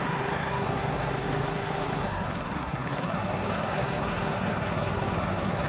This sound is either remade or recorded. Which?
remade